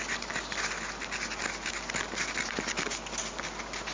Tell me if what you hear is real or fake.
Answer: real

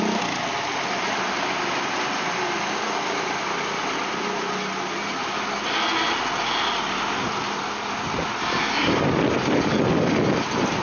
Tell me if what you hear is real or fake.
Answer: real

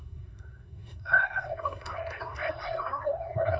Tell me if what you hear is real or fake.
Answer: fake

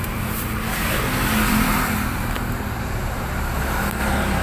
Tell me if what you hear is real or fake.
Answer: fake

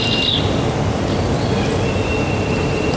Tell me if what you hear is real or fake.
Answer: real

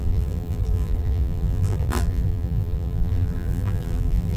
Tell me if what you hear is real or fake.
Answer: fake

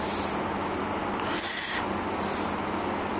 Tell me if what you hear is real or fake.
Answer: real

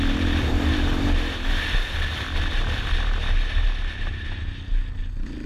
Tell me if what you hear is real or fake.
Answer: real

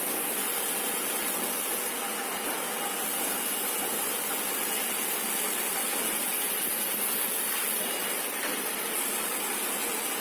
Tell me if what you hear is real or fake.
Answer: real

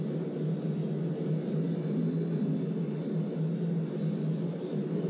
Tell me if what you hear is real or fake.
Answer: real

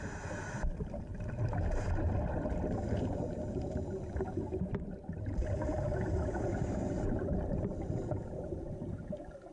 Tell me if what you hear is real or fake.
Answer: real